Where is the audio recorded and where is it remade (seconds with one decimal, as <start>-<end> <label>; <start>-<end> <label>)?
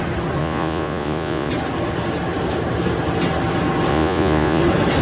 0.0-0.4 recorded; 0.4-1.5 remade; 1.5-3.9 recorded; 3.9-4.6 remade; 4.6-5.0 recorded